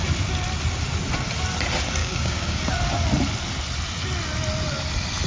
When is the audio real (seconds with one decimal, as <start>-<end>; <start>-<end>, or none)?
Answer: 0.0-2.0; 2.6-5.3